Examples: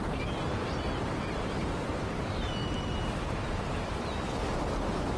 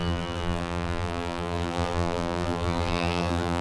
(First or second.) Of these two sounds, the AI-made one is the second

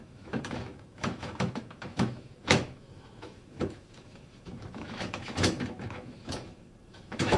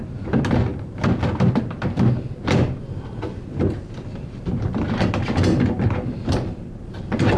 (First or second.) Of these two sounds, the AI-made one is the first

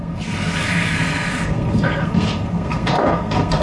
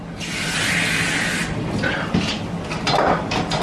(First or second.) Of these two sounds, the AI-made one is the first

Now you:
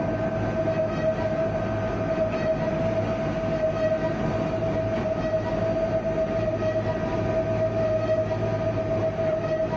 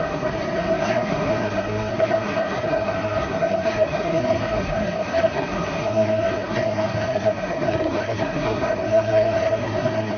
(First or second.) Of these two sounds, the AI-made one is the second